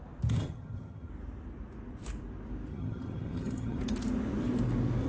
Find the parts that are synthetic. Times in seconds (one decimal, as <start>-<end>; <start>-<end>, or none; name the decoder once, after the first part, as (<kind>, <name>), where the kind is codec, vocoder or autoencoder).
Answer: 0.4-1.1 (vocoder, HiFi-GAN); 2.7-3.8